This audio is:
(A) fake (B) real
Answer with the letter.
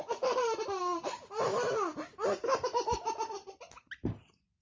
B